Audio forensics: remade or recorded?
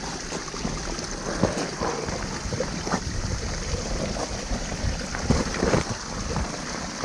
recorded